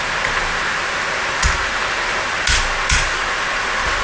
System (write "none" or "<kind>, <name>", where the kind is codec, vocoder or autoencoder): none